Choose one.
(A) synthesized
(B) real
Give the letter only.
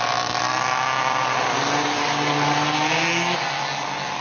B